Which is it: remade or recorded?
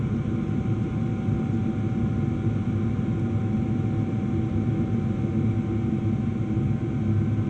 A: recorded